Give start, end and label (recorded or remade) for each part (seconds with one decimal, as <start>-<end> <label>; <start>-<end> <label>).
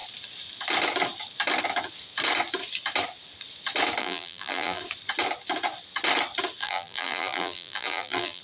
0.0-4.0 recorded; 4.0-4.8 remade; 4.8-6.6 recorded; 6.6-8.4 remade